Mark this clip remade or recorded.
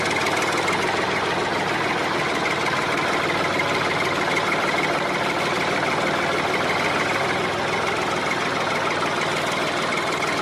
recorded